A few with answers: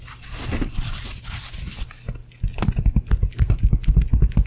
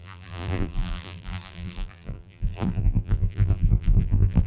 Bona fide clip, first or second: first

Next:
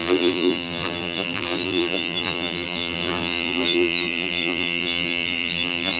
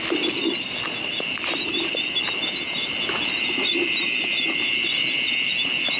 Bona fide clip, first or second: second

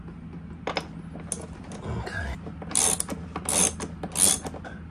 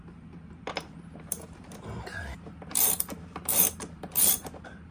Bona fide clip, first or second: first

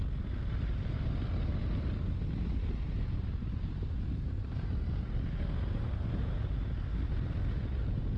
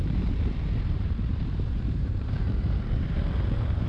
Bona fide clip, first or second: first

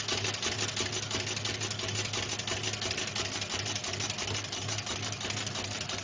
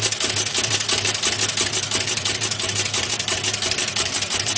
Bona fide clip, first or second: first